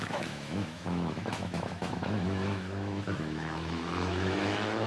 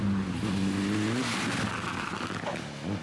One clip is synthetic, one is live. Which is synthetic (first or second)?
first